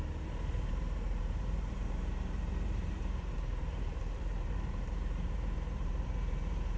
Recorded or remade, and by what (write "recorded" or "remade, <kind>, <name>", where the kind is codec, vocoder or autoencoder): remade, vocoder, BigVGAN v2